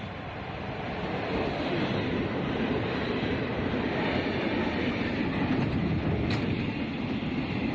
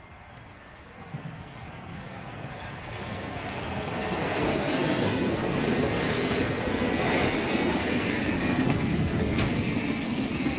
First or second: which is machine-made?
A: second